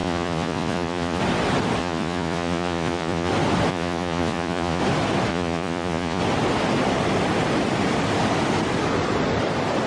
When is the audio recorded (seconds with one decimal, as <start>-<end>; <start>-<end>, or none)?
1.2-1.8; 3.3-3.7; 4.8-5.3; 6.2-9.9